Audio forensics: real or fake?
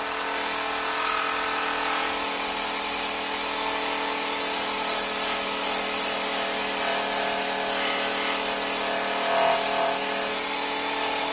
real